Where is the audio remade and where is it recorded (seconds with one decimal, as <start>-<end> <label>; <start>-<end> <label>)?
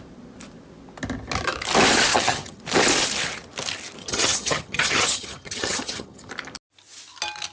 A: 0.0-2.1 recorded; 2.1-2.6 remade; 2.6-4.0 recorded; 4.0-6.3 remade; 6.3-7.5 recorded